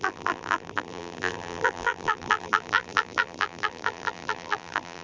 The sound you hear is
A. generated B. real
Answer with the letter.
A